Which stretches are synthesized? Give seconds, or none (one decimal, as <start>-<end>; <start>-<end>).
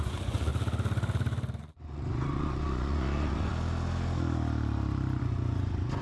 0.0-0.5; 1.6-3.5; 5.2-6.0